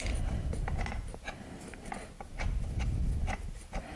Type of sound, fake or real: real